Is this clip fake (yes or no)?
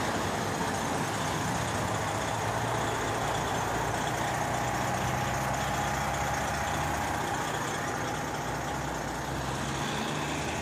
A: no